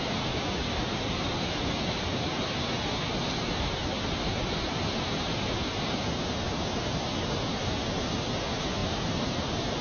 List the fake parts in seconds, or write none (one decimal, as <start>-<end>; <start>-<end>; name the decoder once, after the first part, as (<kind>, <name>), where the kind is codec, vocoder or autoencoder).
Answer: none